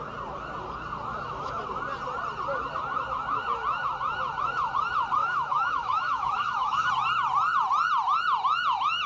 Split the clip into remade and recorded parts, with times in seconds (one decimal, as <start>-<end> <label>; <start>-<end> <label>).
0.0-1.1 recorded; 1.1-1.6 remade; 1.6-5.2 recorded; 5.2-6.9 remade; 6.9-9.1 recorded